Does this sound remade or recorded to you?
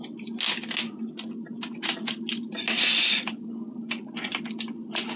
recorded